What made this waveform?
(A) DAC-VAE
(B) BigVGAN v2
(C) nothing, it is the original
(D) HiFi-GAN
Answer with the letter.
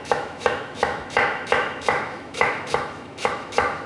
A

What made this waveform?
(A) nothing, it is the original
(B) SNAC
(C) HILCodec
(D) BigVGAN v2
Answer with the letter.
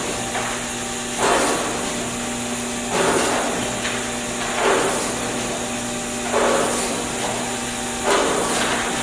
A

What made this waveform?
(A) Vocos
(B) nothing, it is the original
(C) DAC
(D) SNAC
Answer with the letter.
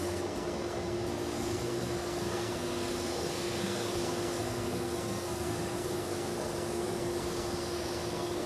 D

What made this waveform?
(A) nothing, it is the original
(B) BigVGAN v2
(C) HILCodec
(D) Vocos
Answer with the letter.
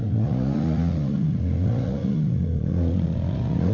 D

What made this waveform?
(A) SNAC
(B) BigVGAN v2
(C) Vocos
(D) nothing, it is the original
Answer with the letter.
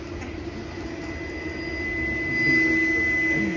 D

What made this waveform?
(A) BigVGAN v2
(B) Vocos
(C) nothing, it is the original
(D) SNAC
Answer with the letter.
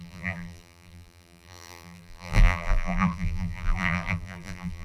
A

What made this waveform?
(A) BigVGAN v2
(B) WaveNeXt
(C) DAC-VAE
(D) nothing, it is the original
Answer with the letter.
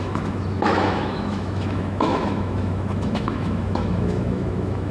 C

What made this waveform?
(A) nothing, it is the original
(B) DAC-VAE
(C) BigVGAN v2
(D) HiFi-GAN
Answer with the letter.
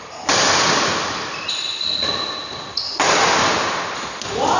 A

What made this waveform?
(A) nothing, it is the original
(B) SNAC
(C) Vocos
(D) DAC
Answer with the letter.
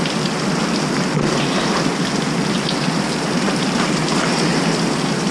A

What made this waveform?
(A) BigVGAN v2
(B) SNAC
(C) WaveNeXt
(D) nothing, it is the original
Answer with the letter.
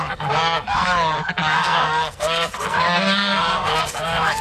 B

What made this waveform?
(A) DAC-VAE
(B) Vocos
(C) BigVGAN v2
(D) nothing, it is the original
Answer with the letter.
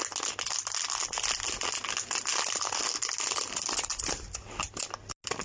D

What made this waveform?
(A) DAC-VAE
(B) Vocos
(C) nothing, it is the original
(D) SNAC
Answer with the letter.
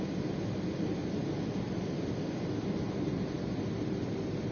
C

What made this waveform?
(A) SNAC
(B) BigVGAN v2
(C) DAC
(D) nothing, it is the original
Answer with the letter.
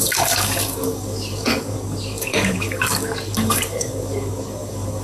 C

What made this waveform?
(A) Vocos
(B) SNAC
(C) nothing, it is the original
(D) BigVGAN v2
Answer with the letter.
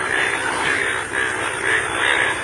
D